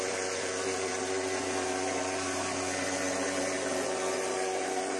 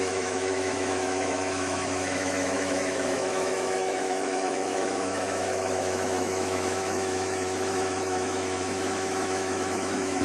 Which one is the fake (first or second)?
second